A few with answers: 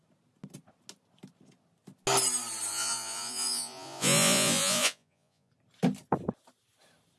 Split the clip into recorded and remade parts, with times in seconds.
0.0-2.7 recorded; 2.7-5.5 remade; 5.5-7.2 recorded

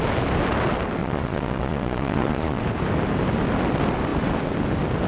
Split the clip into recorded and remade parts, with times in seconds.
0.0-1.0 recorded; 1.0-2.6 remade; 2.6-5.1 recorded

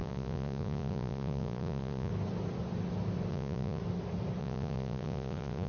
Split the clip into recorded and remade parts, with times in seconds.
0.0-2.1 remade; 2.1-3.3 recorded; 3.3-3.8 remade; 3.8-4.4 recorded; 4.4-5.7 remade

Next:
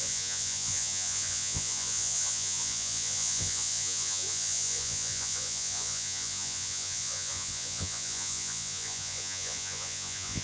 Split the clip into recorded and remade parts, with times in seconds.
0.0-10.4 remade